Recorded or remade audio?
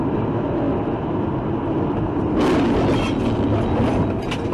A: recorded